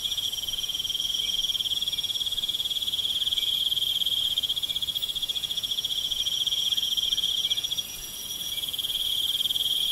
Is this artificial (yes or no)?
yes